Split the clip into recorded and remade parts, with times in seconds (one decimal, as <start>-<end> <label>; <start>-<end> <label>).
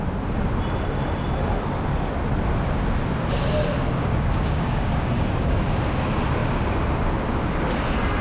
0.0-4.0 recorded; 4.0-5.6 remade; 5.6-8.2 recorded